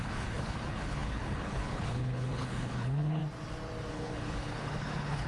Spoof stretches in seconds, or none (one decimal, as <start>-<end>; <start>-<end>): 0.0-3.2; 3.9-5.3